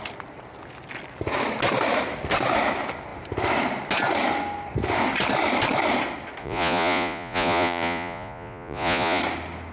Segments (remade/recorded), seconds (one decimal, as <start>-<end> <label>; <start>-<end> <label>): 0.0-6.4 recorded; 6.4-9.2 remade; 9.2-9.7 recorded

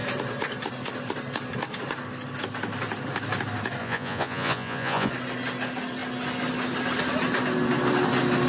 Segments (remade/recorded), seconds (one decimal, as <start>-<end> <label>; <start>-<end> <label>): 0.0-3.8 recorded; 3.8-5.1 remade; 5.1-8.5 recorded